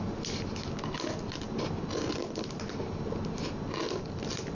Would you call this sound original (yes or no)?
yes